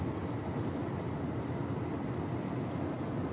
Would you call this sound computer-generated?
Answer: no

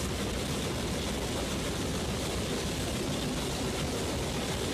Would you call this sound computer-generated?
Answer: no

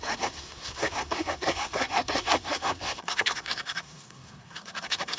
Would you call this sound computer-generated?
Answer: yes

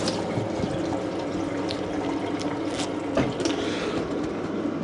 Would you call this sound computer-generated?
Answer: no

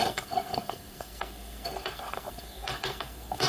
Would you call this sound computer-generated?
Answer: yes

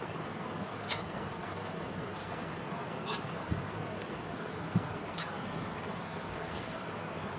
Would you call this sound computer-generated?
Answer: yes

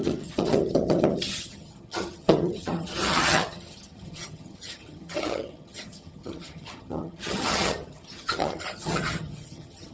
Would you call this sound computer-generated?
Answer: yes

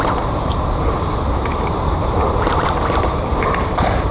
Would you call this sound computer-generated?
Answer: yes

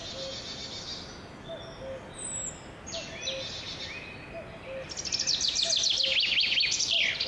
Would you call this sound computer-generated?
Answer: no